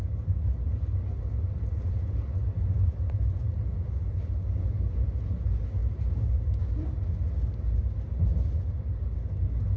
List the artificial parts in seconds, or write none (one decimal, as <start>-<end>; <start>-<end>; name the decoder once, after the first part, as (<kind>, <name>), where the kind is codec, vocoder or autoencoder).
none